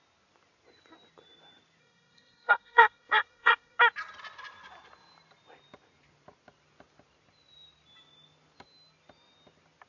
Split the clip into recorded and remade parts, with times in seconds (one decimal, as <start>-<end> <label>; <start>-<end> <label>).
0.0-1.8 recorded; 1.8-3.8 remade; 3.8-9.9 recorded